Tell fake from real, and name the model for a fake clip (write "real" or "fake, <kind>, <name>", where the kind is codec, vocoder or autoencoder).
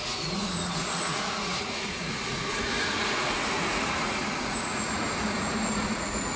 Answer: fake, vocoder, Vocos